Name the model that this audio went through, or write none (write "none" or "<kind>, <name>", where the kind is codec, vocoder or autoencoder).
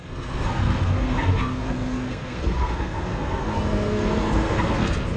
codec, SNAC